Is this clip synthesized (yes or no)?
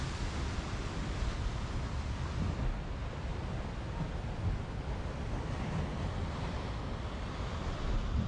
no